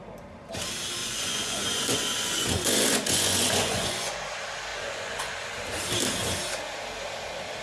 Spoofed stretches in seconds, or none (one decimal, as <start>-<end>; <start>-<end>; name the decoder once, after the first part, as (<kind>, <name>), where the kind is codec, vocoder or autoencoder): 1.0-4.2 (vocoder, Vocos); 4.7-5.3